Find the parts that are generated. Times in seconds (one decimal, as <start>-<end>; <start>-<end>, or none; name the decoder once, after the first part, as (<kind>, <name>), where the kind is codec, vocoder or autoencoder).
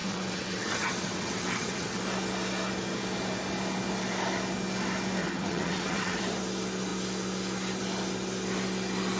0.0-2.0 (vocoder, WaveNeXt); 5.2-6.2